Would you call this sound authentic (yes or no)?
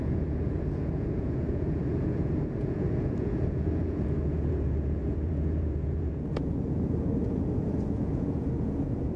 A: no